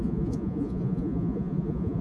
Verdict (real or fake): fake